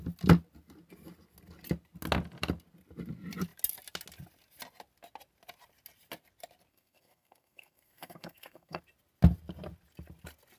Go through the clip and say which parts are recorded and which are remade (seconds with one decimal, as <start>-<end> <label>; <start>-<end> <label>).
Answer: 0.0-6.7 recorded; 6.7-8.8 remade; 8.8-10.6 recorded